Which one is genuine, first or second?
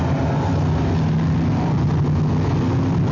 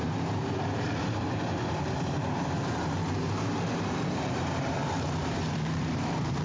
first